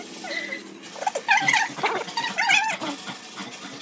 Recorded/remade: recorded